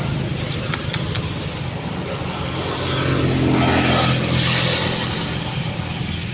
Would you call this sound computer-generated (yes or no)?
no